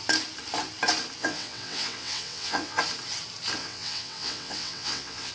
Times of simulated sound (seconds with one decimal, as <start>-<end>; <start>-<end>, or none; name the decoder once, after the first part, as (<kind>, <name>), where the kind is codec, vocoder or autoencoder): 1.2-2.8 (vocoder, WaveNeXt); 3.6-5.3